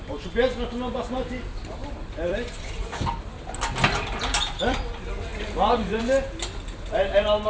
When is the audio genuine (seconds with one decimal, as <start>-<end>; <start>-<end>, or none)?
0.0-1.8; 3.1-7.5